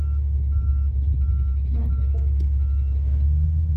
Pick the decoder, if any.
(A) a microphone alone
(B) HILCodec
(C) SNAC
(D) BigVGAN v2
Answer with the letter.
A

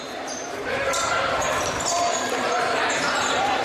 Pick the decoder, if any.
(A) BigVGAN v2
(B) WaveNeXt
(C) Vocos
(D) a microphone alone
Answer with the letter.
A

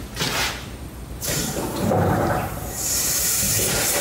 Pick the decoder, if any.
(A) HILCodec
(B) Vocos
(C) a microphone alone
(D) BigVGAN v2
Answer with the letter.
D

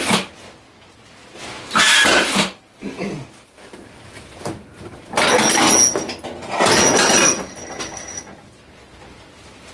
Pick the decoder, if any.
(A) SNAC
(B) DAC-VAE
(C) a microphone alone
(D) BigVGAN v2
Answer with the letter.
C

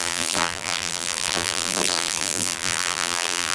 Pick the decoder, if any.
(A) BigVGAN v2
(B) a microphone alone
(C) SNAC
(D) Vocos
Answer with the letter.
A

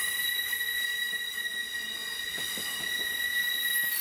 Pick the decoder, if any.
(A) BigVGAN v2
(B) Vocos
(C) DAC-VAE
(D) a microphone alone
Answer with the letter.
D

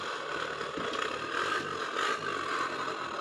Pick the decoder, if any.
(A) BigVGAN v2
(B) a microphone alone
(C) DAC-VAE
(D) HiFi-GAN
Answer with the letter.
B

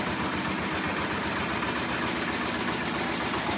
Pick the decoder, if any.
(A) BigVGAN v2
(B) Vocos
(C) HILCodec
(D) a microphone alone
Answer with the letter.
D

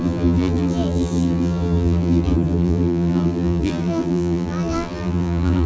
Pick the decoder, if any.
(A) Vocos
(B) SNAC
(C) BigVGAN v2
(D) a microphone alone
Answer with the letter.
C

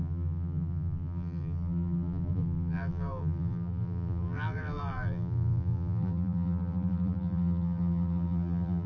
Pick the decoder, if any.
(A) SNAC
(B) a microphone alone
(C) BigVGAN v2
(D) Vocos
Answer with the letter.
C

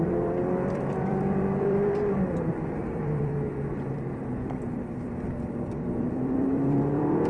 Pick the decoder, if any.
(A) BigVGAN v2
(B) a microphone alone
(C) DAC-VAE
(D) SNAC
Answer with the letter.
A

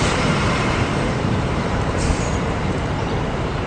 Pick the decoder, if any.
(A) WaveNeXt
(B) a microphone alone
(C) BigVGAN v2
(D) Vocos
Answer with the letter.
C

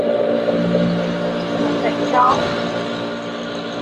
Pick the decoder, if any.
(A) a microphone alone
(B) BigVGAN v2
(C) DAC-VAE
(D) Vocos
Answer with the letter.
A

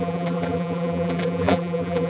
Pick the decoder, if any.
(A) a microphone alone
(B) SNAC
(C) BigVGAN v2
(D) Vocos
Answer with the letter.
C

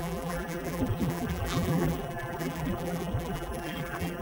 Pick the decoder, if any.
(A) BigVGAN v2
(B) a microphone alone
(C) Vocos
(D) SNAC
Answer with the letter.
A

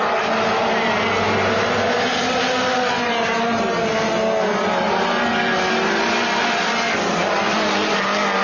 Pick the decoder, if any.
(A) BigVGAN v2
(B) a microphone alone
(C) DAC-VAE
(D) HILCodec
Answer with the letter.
B